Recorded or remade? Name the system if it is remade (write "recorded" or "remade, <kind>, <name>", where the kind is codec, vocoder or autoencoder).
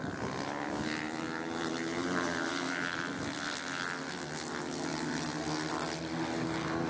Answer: recorded